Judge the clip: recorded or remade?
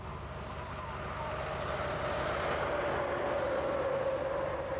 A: recorded